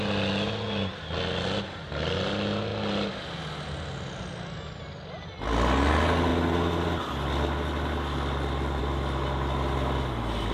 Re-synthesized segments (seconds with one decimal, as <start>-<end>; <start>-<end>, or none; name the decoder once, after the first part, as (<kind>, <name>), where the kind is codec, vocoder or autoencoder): none